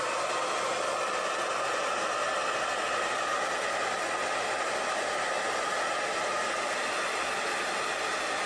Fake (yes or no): no